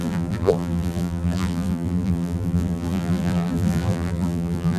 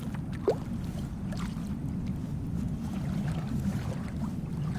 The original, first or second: second